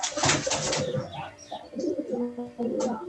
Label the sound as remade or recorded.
recorded